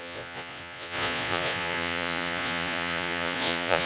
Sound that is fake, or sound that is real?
fake